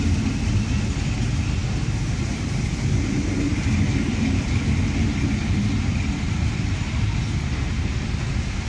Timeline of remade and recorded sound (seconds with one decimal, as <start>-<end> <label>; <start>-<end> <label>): 0.0-3.5 recorded; 3.5-7.0 remade; 7.0-8.7 recorded